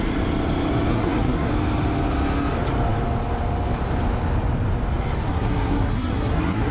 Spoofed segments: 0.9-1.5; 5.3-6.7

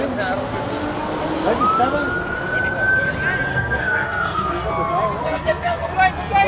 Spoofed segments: 3.5-4.7; 5.2-5.9

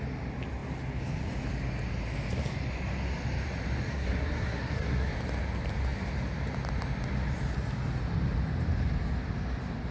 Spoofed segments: 3.9-5.1

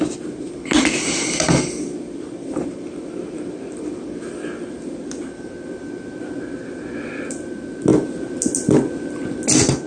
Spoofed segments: none

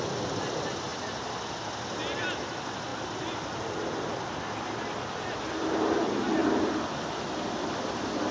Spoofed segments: none

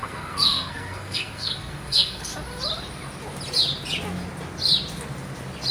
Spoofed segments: 0.0-2.3

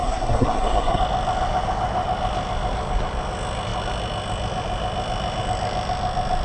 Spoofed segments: 0.0-1.0